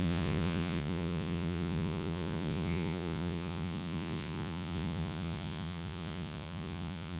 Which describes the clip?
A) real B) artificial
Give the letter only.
B